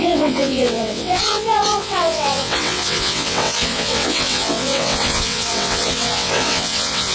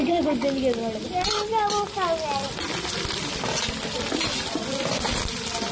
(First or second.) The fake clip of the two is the first